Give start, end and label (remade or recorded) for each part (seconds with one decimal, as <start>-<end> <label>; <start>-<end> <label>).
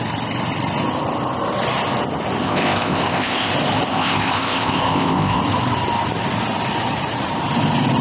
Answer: 0.0-2.4 recorded; 2.4-3.5 remade; 3.5-3.9 recorded; 3.9-5.4 remade; 5.4-8.0 recorded